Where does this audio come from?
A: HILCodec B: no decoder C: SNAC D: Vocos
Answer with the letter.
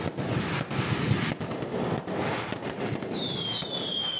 B